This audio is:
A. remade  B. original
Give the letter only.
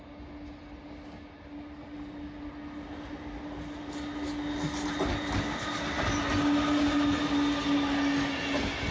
B